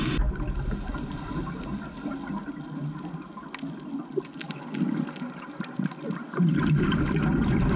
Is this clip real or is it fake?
real